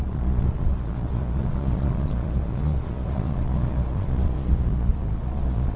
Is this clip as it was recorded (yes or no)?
no